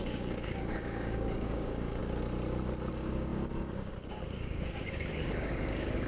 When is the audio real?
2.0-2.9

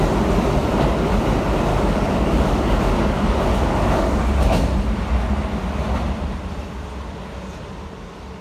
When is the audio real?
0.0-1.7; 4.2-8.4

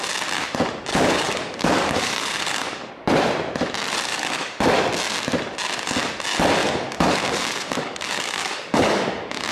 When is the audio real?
0.0-0.9; 2.9-4.1; 4.6-6.6